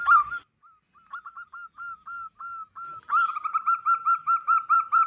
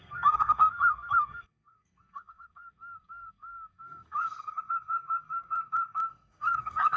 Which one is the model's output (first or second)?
second